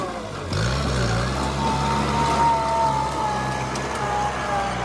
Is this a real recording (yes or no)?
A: yes